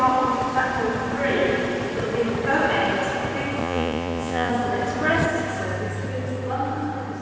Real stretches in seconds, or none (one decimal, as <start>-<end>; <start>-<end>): 0.0-3.6; 4.5-7.2